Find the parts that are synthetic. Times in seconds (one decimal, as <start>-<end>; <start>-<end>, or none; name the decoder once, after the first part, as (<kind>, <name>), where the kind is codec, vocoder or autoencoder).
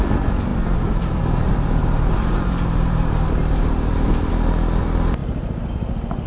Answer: 0.5-4.3 (vocoder, BigVGAN v2)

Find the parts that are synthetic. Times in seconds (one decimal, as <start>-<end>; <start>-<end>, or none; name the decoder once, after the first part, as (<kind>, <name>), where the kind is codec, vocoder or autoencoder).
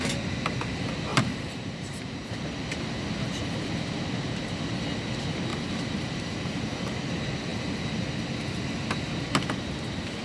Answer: 1.1-2.1 (vocoder, BigVGAN v2); 5.5-6.6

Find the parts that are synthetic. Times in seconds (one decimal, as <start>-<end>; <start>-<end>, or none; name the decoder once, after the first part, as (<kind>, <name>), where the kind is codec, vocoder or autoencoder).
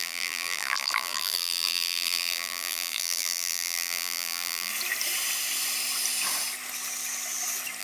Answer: 0.0-4.7 (vocoder, BigVGAN v2)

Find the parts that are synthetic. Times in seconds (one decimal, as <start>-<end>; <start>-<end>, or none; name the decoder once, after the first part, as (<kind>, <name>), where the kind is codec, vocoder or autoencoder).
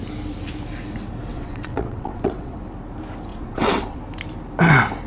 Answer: 1.3-2.6 (vocoder, WaveNeXt); 3.3-4.0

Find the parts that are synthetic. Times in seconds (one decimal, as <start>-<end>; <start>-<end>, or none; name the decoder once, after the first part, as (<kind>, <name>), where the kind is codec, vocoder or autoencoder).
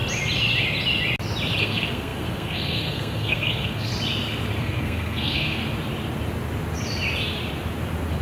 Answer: 1.6-3.9 (codec, SNAC); 4.6-5.6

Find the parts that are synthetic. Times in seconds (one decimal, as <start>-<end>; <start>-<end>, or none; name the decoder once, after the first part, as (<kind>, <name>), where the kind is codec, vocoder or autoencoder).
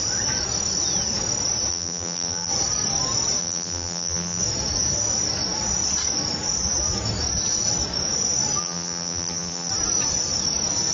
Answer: 1.7-2.5 (vocoder, BigVGAN v2); 3.4-4.4; 8.6-9.7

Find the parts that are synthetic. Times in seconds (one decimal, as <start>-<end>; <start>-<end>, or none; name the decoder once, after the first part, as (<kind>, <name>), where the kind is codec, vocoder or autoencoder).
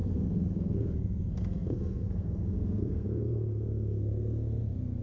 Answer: 0.0-5.0 (codec, SNAC)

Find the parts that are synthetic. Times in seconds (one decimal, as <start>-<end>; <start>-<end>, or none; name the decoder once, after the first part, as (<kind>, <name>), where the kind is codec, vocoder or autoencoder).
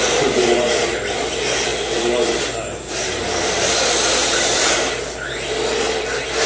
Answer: none